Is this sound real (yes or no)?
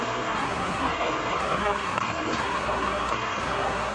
no